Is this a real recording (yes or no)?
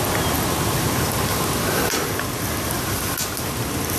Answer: yes